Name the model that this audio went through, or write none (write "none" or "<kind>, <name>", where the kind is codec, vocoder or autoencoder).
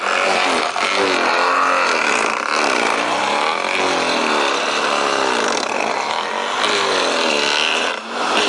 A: none